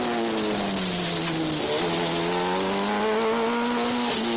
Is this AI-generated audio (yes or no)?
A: no